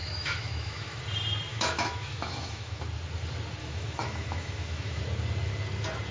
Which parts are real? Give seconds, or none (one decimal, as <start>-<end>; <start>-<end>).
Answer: 1.0-1.5; 2.8-3.6; 5.0-6.1